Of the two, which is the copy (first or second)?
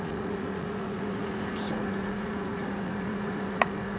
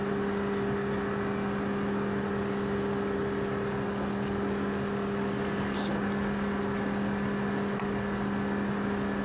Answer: first